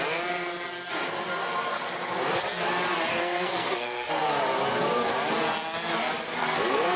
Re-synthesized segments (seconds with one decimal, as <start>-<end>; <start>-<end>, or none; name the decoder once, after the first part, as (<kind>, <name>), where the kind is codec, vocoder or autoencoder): 3.1-4.1 (codec, SNAC); 6.4-7.0